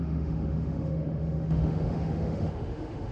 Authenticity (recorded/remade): remade